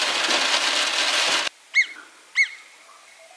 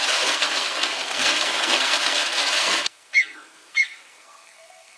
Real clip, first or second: first